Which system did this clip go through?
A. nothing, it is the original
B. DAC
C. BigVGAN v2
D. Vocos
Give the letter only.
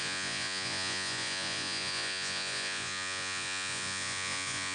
D